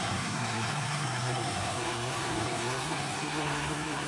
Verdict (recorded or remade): remade